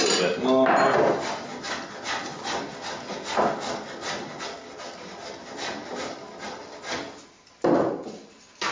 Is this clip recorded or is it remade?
recorded